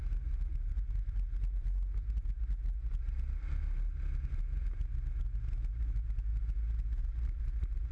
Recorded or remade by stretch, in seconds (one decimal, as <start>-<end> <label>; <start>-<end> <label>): 0.0-7.9 recorded